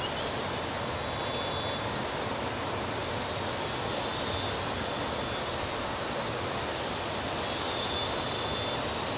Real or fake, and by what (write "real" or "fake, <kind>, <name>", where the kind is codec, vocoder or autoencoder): real